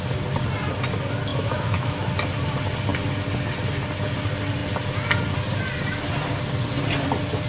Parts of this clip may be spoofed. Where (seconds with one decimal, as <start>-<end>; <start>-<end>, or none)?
1.3-2.0